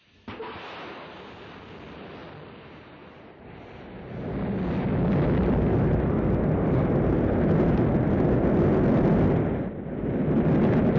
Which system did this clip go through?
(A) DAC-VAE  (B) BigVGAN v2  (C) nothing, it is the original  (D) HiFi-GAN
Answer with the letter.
C